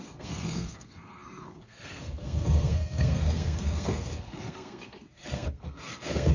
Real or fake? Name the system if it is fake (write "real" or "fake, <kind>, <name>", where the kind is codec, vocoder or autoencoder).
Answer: fake, codec, SNAC